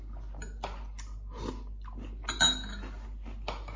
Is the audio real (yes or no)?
yes